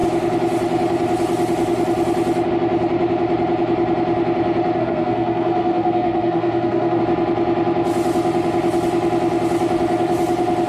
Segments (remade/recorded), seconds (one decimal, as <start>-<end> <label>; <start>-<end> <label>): 0.0-4.8 recorded; 4.8-7.0 remade; 7.0-10.7 recorded